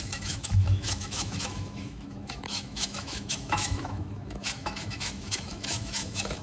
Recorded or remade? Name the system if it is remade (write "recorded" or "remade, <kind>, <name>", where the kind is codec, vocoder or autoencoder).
remade, autoencoder, DAC-VAE